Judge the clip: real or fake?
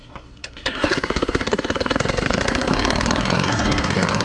fake